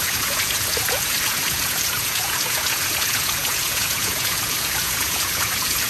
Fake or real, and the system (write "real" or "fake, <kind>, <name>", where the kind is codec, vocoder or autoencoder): fake, vocoder, Vocos